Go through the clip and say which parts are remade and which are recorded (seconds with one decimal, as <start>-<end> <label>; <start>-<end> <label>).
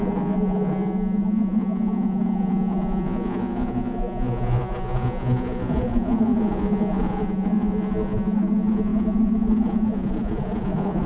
0.0-11.1 remade